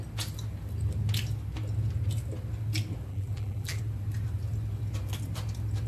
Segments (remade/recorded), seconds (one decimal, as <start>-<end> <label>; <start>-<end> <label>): 0.0-3.1 recorded; 3.1-3.8 remade; 3.8-5.9 recorded